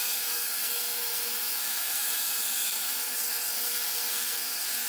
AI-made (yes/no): yes